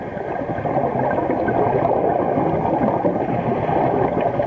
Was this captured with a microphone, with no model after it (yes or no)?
yes